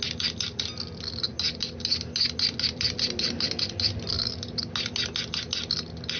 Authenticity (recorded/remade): recorded